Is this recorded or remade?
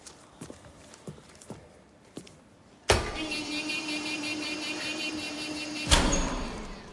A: remade